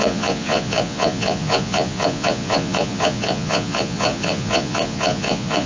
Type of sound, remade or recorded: remade